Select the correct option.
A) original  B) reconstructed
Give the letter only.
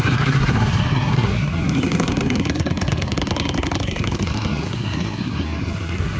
B